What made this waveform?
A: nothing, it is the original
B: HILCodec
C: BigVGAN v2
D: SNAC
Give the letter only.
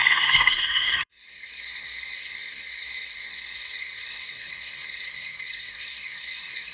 D